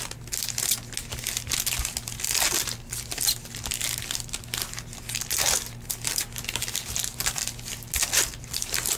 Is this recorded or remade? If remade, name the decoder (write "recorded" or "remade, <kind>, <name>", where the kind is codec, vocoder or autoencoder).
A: recorded